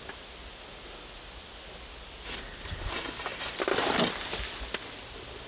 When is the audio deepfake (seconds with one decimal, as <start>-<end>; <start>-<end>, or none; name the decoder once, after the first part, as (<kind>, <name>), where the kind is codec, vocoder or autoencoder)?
none